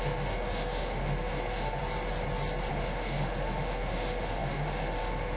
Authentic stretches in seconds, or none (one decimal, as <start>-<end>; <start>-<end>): 1.8-2.7